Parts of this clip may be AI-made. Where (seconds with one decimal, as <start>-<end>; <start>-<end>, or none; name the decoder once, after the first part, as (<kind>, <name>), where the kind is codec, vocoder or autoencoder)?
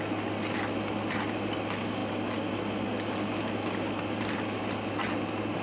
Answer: none